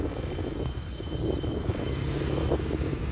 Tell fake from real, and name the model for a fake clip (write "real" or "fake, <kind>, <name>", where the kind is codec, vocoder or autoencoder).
real